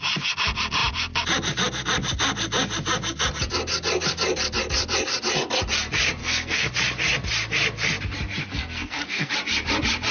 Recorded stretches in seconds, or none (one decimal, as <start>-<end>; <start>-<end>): 0.0-6.2; 6.7-8.5; 9.3-10.1